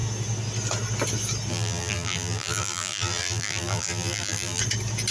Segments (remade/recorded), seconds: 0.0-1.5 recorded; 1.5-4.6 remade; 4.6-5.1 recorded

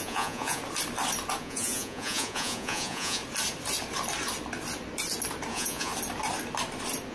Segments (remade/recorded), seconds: 0.0-0.6 remade; 0.6-1.4 recorded; 1.4-3.2 remade; 3.2-5.5 recorded; 5.5-5.9 remade; 5.9-7.1 recorded

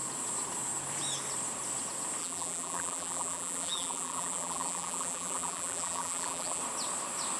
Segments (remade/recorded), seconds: 0.0-2.2 recorded; 2.2-6.6 remade; 6.6-7.4 recorded

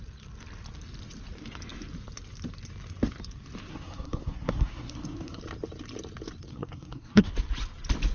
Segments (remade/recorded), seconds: 0.0-3.7 recorded; 3.7-5.4 remade; 5.4-6.5 recorded; 6.5-7.3 remade; 7.3-8.1 recorded